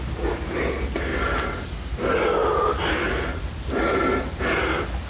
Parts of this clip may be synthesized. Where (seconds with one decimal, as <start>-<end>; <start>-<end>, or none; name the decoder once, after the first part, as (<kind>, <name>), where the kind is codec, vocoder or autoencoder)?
none